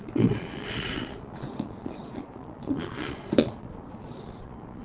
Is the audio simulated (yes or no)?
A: yes